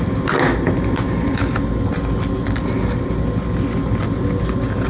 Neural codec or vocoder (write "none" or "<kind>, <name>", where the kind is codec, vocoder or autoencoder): none